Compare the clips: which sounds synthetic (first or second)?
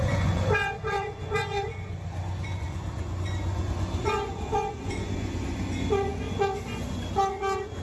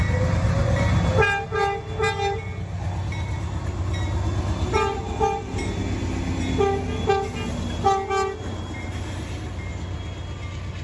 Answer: first